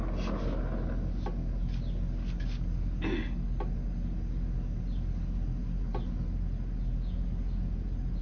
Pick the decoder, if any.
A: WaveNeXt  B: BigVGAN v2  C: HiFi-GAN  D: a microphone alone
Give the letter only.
D